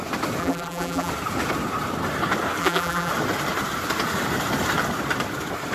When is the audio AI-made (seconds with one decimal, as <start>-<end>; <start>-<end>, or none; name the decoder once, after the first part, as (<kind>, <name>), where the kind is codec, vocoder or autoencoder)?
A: 0.4-1.1 (vocoder, BigVGAN v2); 2.6-3.1